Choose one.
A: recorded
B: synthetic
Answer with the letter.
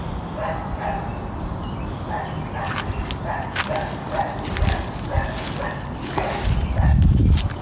A